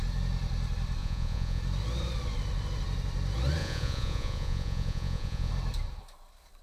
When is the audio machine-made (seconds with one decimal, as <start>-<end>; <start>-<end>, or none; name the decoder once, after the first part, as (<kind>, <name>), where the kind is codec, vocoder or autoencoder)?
1.0-1.6 (vocoder, Vocos); 3.6-5.5